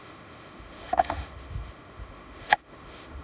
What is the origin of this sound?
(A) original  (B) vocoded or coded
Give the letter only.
B